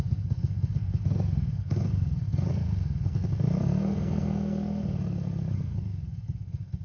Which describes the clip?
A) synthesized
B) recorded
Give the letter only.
A